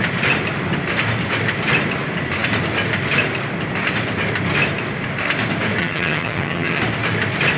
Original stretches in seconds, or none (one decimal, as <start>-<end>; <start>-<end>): 0.0-5.8; 6.8-7.6